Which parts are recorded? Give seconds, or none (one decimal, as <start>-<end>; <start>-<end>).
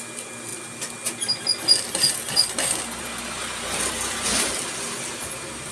0.0-5.7